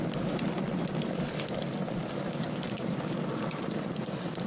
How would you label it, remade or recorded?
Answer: recorded